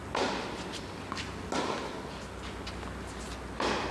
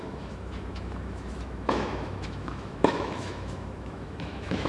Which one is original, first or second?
first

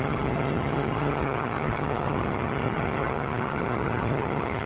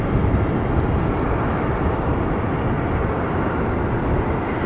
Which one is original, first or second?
second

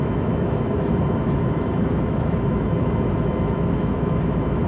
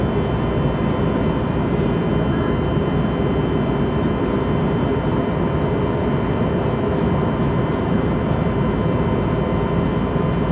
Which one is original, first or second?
second